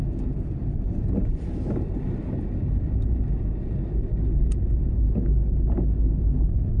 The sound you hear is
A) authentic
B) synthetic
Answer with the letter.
A